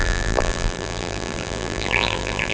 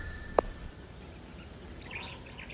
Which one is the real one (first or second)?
second